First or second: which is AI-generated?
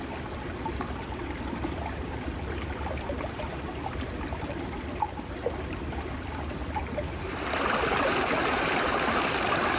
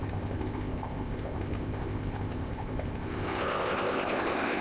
second